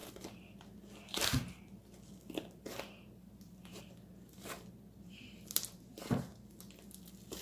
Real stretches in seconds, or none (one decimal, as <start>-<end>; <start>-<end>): 0.0-7.4